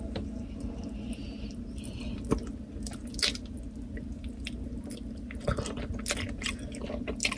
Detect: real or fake real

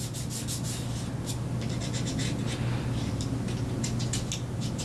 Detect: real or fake real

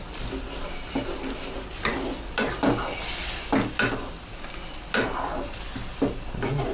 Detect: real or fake real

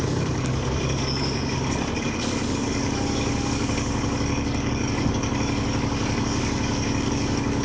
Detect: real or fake fake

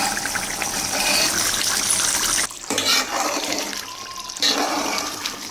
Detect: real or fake real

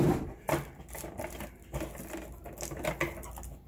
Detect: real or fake real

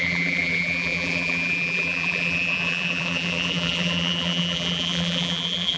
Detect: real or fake fake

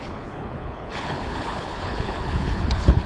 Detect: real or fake fake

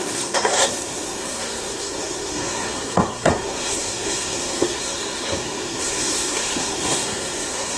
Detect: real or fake fake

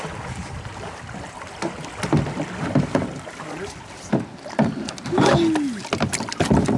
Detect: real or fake real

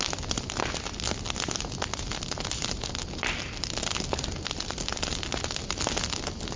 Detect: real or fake real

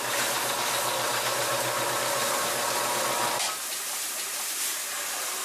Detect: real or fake real